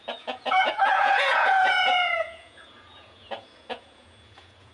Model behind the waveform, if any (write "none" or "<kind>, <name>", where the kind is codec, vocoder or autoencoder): vocoder, Vocos